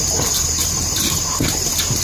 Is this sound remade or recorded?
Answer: recorded